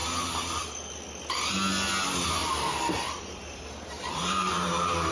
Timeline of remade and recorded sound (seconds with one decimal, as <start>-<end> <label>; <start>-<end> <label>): 0.0-0.6 remade; 0.6-2.4 recorded; 2.4-5.1 remade